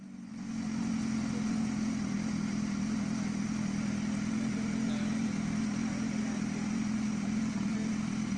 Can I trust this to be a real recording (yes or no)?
yes